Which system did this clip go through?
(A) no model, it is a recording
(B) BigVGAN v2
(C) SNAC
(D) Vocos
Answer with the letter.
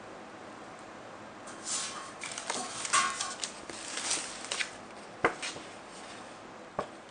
A